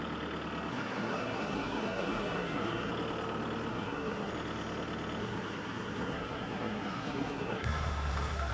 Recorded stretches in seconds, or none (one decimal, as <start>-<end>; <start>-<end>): 0.0-0.7; 2.9-3.7; 4.3-5.2